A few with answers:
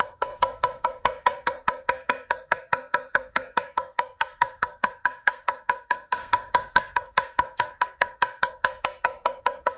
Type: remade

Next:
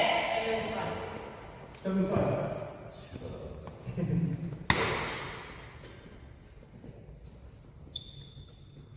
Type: recorded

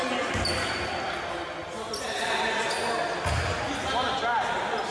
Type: recorded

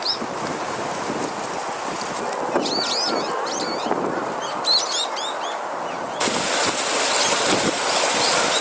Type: recorded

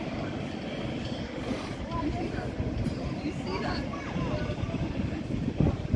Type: recorded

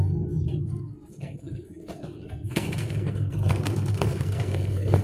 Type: remade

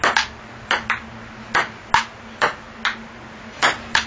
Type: recorded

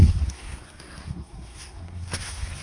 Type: remade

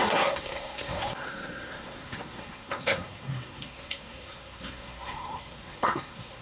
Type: remade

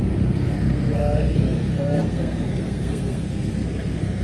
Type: remade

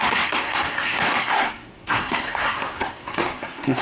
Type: remade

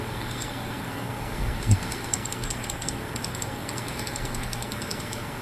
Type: remade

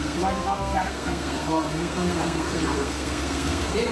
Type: remade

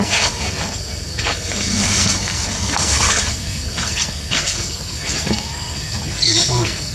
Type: remade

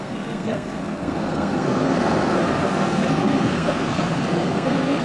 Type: remade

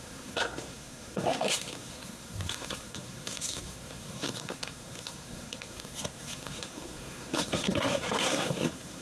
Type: remade